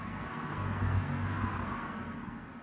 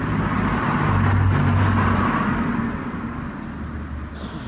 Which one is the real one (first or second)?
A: second